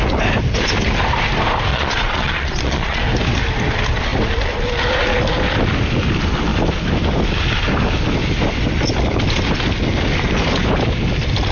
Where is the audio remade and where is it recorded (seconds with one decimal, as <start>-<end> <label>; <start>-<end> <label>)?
0.0-1.7 recorded; 1.7-3.0 remade; 3.0-11.5 recorded